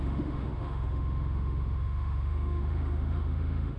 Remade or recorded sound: remade